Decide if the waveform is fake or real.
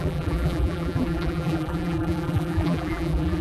fake